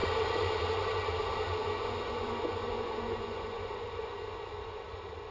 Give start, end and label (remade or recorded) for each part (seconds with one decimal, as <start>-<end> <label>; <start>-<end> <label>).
0.0-1.6 recorded; 1.6-4.8 remade; 4.8-5.3 recorded